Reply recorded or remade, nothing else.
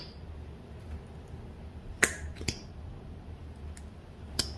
recorded